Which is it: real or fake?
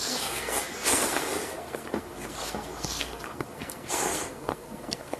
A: fake